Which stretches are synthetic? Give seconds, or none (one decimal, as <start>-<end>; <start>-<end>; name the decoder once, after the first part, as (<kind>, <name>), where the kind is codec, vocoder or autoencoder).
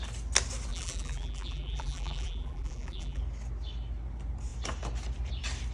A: 0.7-3.2 (vocoder, BigVGAN v2)